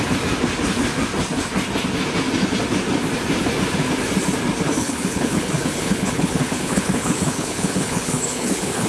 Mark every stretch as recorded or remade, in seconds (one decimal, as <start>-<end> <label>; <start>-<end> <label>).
0.0-4.8 recorded; 4.8-8.9 remade